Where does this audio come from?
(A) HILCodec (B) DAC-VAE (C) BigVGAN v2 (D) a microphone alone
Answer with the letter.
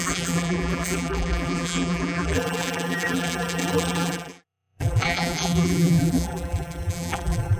C